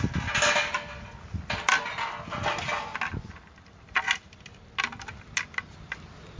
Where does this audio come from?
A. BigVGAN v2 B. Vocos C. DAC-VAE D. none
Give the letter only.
D